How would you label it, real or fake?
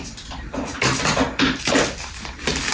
real